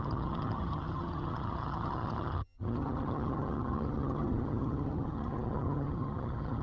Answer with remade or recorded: remade